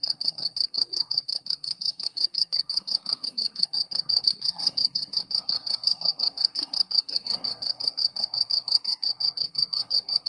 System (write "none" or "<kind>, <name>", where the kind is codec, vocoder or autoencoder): codec, SNAC